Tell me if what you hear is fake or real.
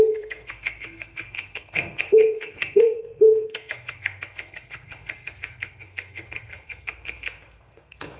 fake